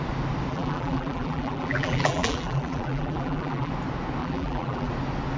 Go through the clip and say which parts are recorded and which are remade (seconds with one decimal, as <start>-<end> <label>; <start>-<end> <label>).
0.0-0.5 recorded; 0.5-3.7 remade; 3.7-4.2 recorded; 4.2-4.9 remade; 4.9-5.4 recorded